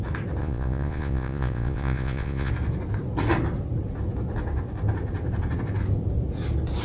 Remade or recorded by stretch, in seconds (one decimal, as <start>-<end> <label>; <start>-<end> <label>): 0.0-0.4 recorded; 0.4-2.5 remade; 2.5-6.8 recorded